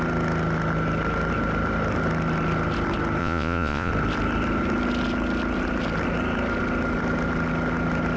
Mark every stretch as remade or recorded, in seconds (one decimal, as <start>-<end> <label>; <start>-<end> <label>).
0.0-3.2 recorded; 3.2-3.9 remade; 3.9-8.2 recorded